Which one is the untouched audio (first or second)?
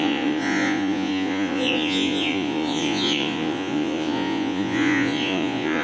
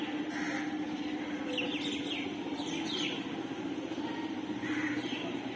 second